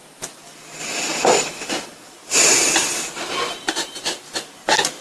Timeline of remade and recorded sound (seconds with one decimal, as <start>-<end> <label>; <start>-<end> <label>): 0.0-3.0 remade; 3.0-5.0 recorded